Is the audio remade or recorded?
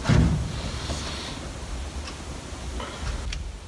recorded